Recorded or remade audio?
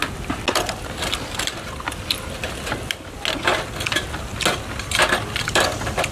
recorded